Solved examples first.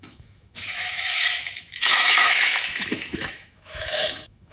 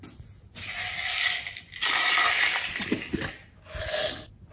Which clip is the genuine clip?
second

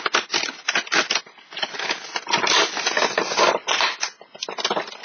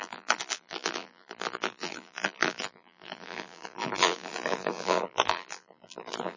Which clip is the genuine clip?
first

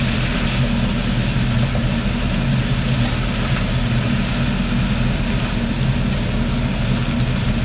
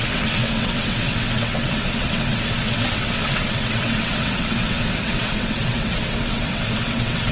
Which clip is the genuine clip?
first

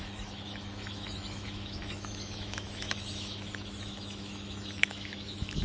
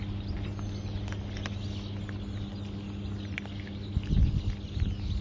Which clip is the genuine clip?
second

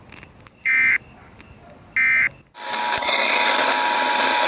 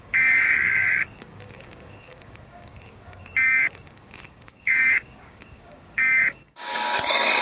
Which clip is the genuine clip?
first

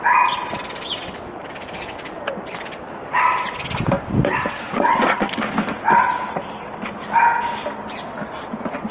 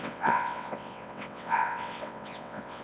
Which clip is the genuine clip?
first